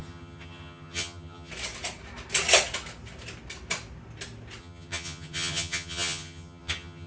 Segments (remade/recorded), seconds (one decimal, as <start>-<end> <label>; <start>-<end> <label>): 0.0-1.5 remade; 1.5-4.6 recorded; 4.6-7.1 remade